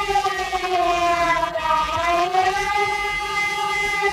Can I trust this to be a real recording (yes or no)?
no